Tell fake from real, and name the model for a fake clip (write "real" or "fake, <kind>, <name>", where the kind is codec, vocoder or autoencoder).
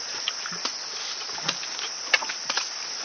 real